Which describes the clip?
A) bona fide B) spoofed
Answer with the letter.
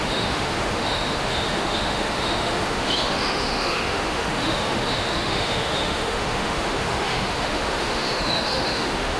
B